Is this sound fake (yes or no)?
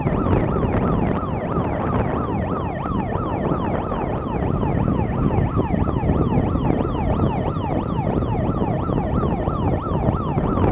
no